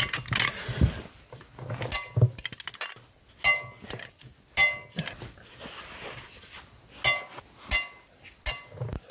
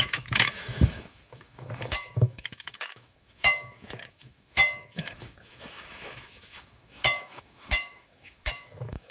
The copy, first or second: second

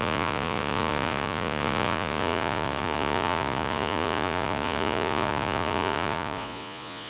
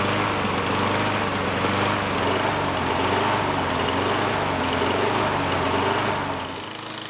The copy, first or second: first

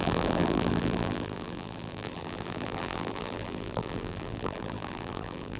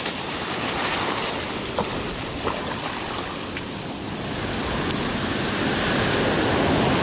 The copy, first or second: first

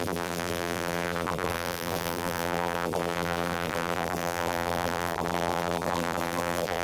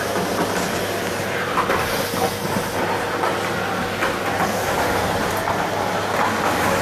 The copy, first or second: first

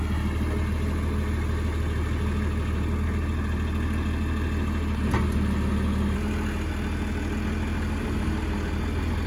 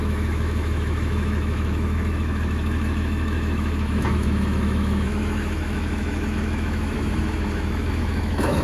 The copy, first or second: second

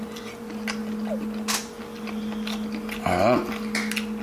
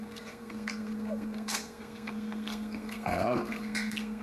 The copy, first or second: second